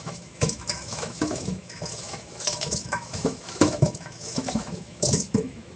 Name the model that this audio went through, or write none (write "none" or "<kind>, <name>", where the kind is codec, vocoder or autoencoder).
autoencoder, DAC-VAE